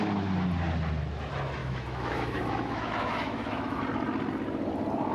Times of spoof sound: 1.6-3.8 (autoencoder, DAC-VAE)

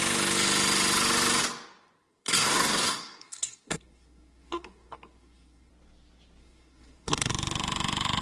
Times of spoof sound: 2.0-5.7 (codec, SNAC); 6.4-7.3

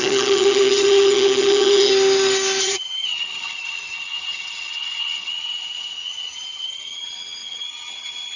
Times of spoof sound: 0.0-1.9 (vocoder, HiFi-GAN); 2.6-8.4